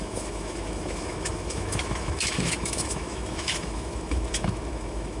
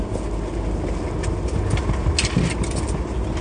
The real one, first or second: second